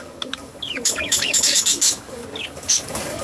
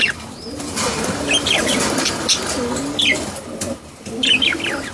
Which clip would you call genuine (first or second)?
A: second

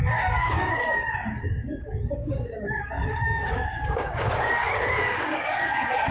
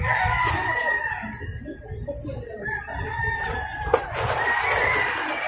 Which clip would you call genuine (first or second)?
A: second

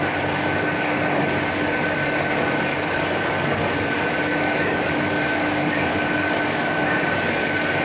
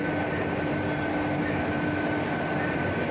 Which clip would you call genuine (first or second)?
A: second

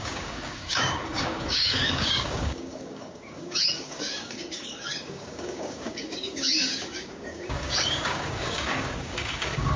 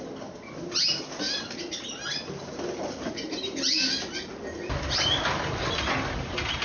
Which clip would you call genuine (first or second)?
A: second